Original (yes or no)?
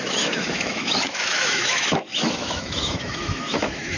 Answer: no